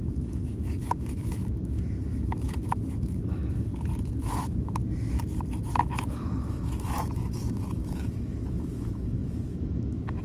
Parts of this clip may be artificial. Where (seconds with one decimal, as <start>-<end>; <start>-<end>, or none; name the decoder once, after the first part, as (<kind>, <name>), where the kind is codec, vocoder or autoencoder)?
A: 0.0-3.7 (autoencoder, DAC-VAE); 4.2-4.8; 5.8-10.2